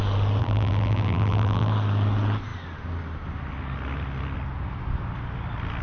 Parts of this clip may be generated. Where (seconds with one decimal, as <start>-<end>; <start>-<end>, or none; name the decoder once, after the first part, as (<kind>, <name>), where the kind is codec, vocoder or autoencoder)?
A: 0.4-1.7 (vocoder, BigVGAN v2)